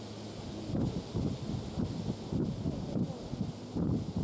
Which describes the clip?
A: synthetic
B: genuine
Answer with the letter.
B